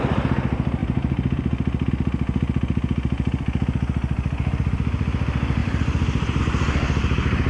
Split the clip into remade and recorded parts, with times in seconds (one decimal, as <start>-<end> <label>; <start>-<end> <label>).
0.0-0.8 recorded; 0.8-1.9 remade; 1.9-5.6 recorded; 5.6-6.4 remade; 6.4-7.5 recorded